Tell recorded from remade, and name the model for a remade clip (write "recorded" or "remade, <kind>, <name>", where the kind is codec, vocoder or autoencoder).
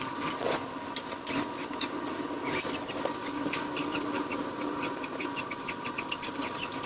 remade, vocoder, BigVGAN v2